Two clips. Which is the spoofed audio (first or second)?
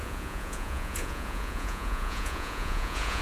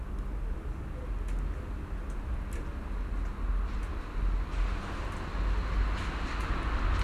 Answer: first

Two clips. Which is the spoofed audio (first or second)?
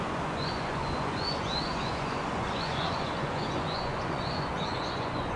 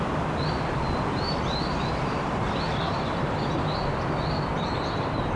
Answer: first